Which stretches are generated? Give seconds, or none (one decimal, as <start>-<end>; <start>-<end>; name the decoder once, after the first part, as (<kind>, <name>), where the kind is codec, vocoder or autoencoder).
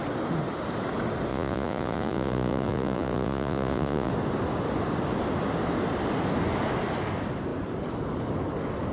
1.3-4.1 (vocoder, Vocos)